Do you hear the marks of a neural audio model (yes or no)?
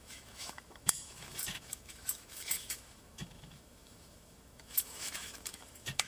yes